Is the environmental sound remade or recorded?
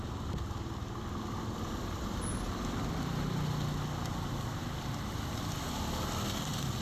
recorded